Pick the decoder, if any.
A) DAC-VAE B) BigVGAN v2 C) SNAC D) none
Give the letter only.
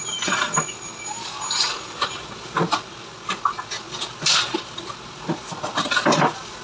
D